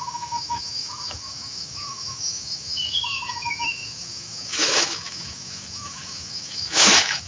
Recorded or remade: remade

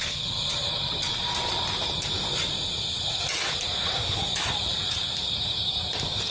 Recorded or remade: recorded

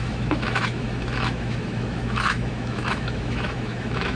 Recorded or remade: remade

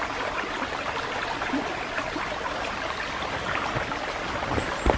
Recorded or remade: recorded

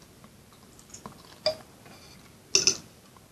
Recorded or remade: recorded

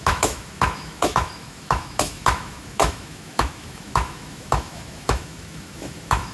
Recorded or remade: remade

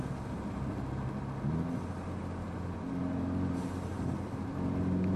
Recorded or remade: recorded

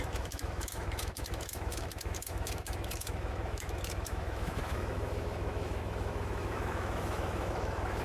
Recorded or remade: remade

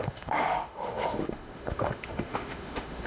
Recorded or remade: remade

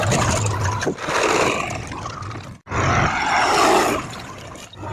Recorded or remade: recorded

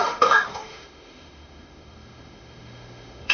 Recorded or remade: remade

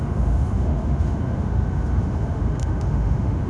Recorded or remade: remade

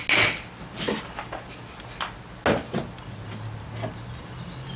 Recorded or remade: recorded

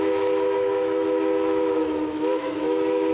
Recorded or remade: remade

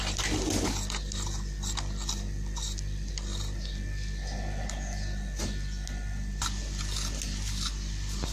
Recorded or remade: recorded